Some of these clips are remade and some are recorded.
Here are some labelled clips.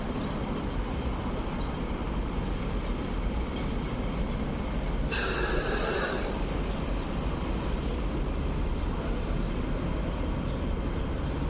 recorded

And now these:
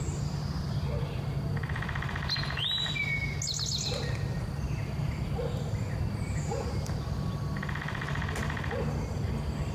recorded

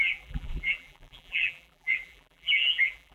remade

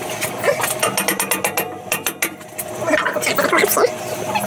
recorded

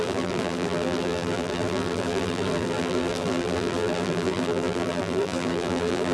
remade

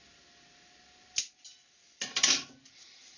recorded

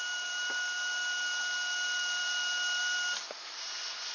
recorded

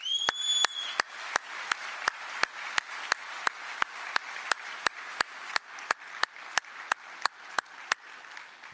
recorded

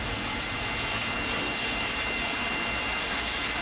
remade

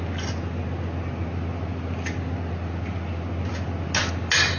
recorded